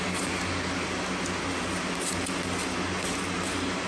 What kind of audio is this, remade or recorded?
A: recorded